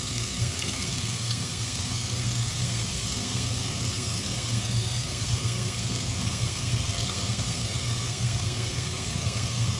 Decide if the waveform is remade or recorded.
remade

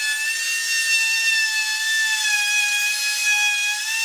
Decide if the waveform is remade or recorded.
recorded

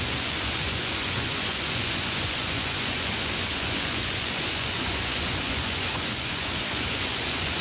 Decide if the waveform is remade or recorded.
remade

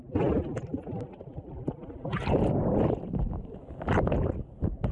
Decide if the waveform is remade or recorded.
recorded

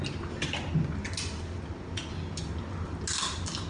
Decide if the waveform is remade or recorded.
recorded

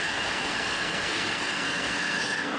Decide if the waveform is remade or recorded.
remade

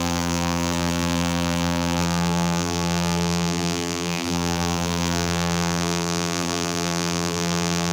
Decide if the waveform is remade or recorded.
remade